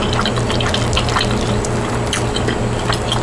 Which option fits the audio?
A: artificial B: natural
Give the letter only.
B